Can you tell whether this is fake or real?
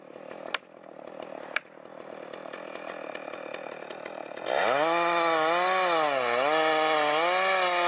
real